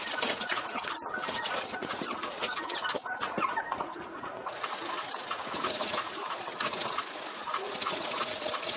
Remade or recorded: remade